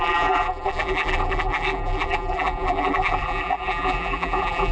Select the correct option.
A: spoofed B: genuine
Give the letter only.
A